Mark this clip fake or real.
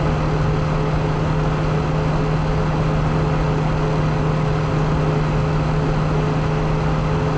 real